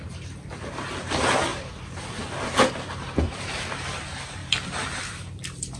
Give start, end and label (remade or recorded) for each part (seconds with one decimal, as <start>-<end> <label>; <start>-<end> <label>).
0.0-4.4 remade; 4.4-5.0 recorded; 5.0-5.8 remade